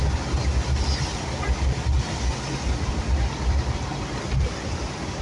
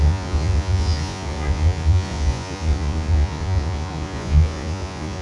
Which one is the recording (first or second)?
first